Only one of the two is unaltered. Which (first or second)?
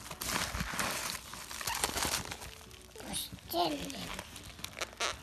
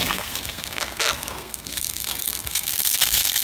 first